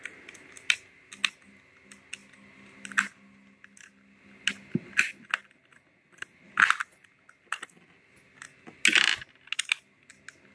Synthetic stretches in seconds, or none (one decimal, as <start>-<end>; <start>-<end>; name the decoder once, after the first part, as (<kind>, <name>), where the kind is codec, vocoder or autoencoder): none